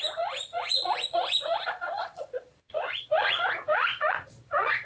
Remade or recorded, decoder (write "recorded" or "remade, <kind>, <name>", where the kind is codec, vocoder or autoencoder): remade, vocoder, Vocos